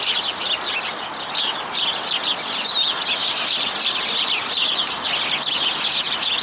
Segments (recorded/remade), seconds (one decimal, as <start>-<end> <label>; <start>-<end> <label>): 0.0-3.2 recorded; 3.2-3.7 remade; 3.7-6.4 recorded